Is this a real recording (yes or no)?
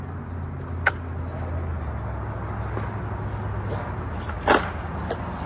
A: yes